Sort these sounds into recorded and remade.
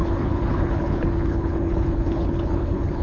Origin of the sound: remade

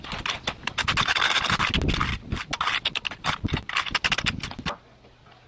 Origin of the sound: recorded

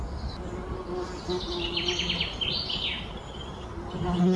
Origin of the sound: recorded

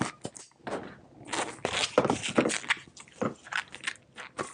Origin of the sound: recorded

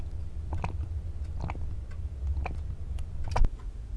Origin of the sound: recorded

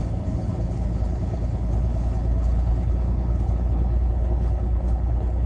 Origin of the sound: remade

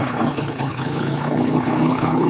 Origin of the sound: remade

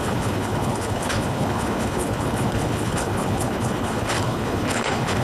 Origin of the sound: remade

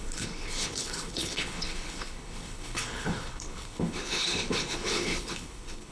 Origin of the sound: remade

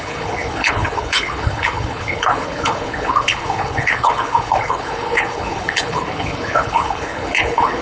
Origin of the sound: remade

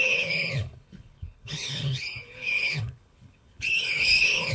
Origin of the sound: remade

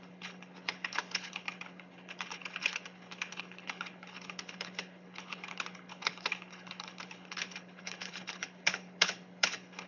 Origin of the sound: remade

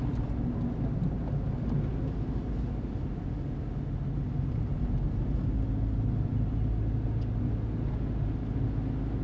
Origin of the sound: recorded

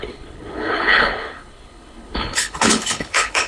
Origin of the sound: remade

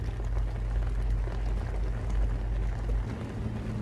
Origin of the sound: recorded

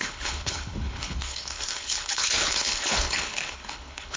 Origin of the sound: remade